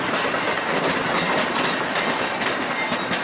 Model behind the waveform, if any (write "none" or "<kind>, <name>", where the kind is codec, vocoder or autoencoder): none